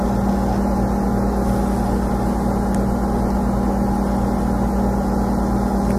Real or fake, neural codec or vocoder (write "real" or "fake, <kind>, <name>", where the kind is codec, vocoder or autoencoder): real